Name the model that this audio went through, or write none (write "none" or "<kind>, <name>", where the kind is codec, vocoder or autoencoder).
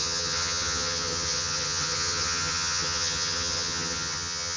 vocoder, HiFi-GAN